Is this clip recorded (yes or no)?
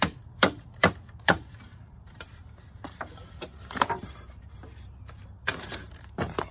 no